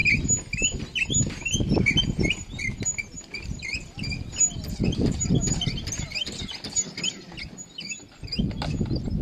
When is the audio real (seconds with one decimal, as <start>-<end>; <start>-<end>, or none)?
0.0-9.2